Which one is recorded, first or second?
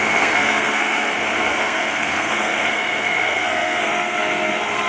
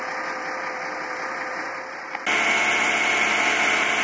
second